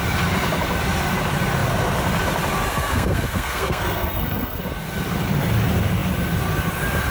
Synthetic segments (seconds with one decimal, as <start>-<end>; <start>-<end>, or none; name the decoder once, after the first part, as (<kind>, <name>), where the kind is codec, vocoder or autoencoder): 2.7-4.6 (codec, SNAC)